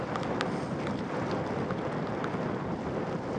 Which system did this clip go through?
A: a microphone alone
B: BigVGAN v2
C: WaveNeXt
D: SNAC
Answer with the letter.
A